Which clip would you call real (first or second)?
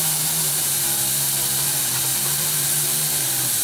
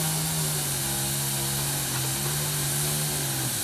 second